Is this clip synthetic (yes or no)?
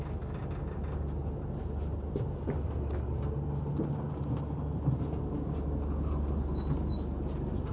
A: no